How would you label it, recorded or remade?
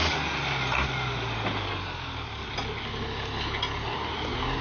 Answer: recorded